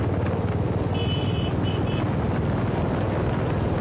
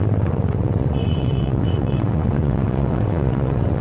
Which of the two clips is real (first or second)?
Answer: first